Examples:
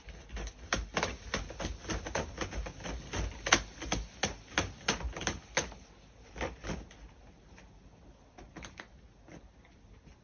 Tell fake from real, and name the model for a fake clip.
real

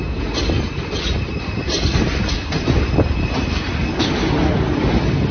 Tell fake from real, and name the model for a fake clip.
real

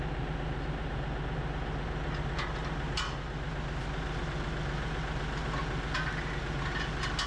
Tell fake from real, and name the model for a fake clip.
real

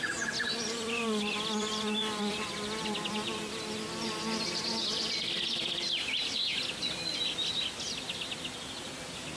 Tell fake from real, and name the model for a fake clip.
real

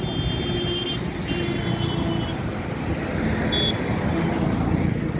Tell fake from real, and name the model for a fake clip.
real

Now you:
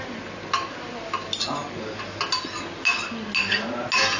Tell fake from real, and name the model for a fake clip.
real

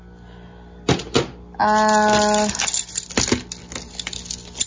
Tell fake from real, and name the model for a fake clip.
real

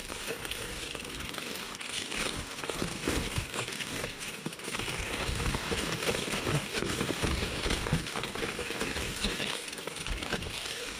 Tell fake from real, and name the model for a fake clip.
fake, codec, DAC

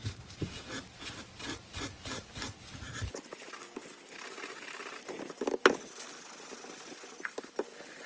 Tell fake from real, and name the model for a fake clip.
real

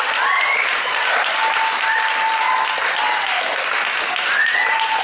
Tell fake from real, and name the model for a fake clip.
real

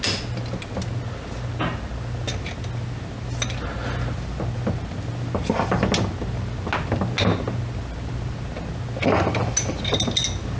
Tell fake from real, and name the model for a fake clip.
real